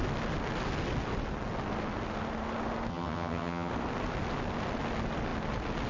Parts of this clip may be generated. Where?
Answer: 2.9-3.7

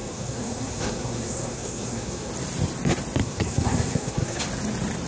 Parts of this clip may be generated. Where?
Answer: 0.0-2.3; 3.2-4.4

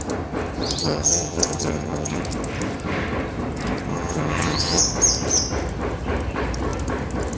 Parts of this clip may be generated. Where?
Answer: 0.8-2.2; 3.9-4.8

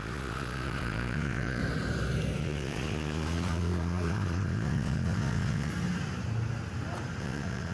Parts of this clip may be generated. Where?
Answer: 0.0-1.6; 2.4-5.7; 7.2-7.7

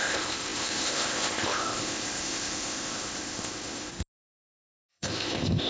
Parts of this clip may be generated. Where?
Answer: 0.0-3.9; 4.9-5.7

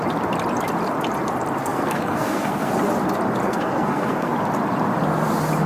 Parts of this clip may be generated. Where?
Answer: 1.6-2.7; 3.4-4.3